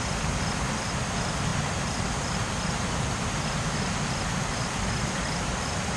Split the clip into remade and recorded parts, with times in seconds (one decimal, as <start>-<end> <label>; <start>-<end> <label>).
0.0-1.5 remade; 1.5-4.7 recorded; 4.7-6.0 remade